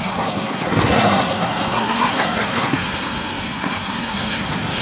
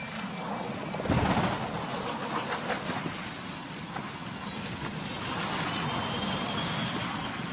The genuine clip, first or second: second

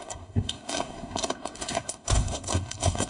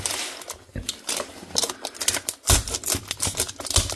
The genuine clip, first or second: second